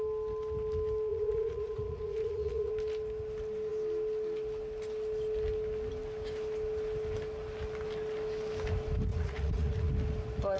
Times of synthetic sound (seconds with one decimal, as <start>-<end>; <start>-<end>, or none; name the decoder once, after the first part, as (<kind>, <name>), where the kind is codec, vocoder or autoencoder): 1.1-2.7 (vocoder, Vocos); 9.1-9.9